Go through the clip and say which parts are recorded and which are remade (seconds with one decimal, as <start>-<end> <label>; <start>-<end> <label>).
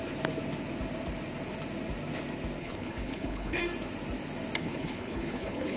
0.0-2.6 recorded; 2.6-3.6 remade; 3.6-4.6 recorded; 4.6-5.8 remade